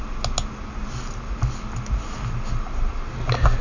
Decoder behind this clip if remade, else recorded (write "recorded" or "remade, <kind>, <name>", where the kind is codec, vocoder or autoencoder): recorded